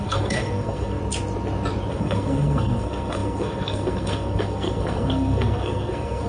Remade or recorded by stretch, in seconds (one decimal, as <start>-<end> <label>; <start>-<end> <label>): 0.0-1.0 remade; 1.0-1.9 recorded; 1.9-6.3 remade